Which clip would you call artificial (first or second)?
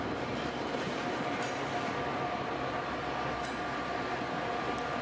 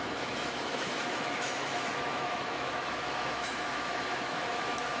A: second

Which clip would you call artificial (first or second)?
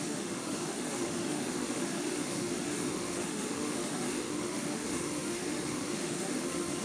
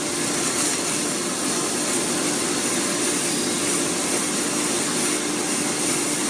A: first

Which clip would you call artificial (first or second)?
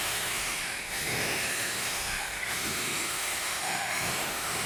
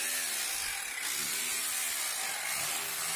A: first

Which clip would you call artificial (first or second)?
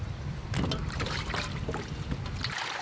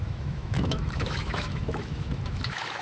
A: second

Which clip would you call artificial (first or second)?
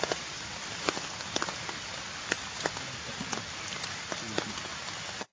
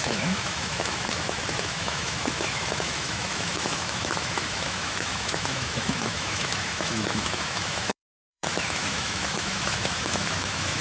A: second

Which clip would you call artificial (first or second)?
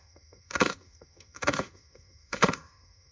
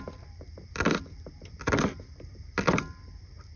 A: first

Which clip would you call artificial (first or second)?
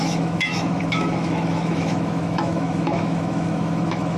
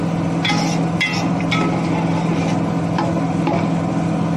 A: first